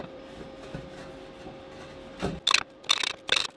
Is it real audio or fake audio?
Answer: real